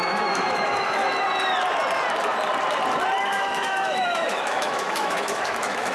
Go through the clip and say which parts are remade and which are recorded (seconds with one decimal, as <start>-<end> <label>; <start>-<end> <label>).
0.0-1.0 remade; 1.0-3.2 recorded; 3.2-5.9 remade